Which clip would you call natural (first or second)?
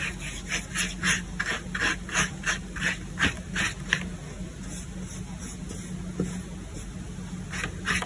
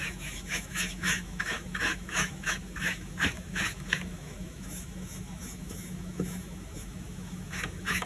first